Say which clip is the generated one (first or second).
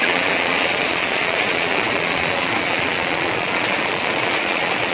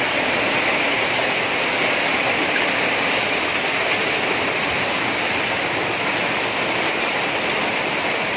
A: first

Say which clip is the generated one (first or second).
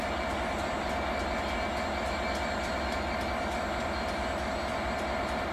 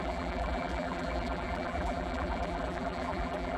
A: second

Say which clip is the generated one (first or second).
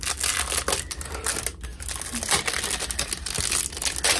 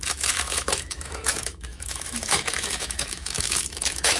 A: second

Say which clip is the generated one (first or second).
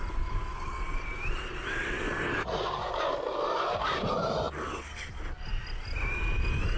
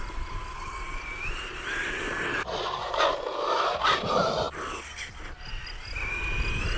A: second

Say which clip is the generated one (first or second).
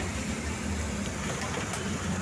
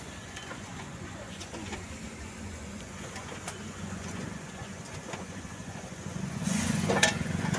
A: second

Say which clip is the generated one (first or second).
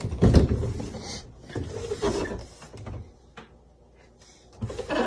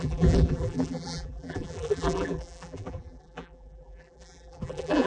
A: second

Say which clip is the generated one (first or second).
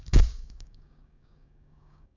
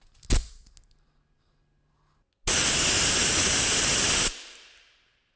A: first